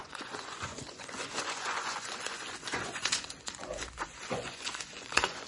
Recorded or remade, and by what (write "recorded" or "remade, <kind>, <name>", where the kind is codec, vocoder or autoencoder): remade, vocoder, Vocos